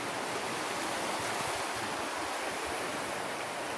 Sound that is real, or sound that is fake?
real